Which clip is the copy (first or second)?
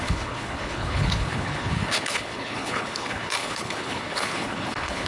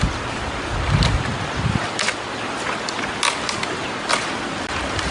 first